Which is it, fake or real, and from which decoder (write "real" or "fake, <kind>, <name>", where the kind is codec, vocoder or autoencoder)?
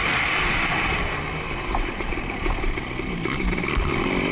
fake, vocoder, BigVGAN v2